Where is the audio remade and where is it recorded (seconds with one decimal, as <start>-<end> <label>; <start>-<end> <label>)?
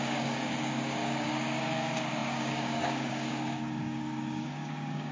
0.0-5.1 remade